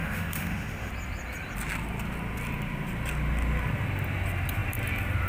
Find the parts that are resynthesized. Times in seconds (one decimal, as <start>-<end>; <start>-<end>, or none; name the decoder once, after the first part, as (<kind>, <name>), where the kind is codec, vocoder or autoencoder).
0.0-0.9 (autoencoder, DAC-VAE)